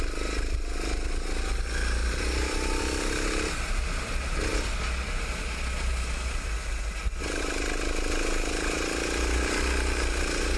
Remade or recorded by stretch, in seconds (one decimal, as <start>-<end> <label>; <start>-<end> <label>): 0.0-2.0 recorded; 2.0-2.8 remade; 2.8-10.6 recorded